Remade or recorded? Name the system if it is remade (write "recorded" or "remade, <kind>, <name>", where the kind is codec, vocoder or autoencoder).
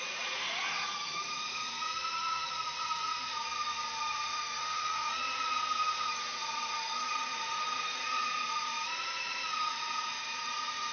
remade, vocoder, Vocos